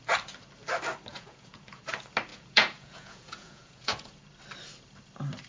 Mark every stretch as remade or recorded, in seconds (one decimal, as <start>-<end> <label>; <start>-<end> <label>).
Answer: 0.0-1.1 recorded; 1.1-1.8 remade; 1.8-2.3 recorded; 2.3-4.2 remade; 4.2-5.5 recorded